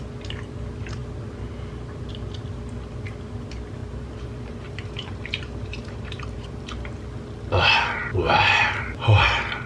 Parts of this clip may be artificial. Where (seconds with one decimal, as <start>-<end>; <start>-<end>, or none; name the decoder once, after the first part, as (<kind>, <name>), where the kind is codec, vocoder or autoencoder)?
3.8-6.7 (vocoder, BigVGAN v2)